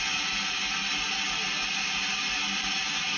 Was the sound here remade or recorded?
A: recorded